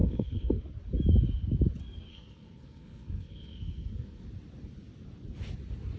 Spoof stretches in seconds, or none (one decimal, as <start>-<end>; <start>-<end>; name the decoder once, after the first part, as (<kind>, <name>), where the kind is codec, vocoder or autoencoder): 0.0-0.6 (codec, SNAC); 2.1-4.2